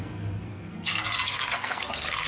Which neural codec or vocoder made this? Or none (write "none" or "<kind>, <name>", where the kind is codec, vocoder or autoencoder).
codec, SNAC